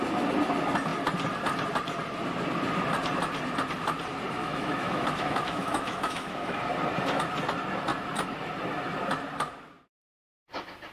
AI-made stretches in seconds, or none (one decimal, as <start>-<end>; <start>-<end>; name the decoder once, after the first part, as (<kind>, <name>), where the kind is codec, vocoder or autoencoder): 4.4-6.6 (autoencoder, DAC-VAE)